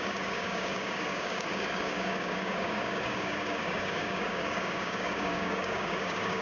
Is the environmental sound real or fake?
fake